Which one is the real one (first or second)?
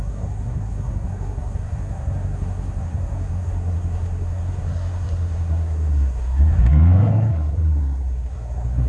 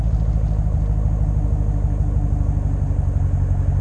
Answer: second